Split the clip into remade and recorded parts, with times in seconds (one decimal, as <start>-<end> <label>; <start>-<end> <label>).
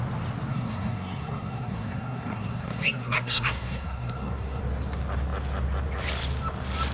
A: 0.0-0.5 recorded; 0.5-4.6 remade; 4.6-6.9 recorded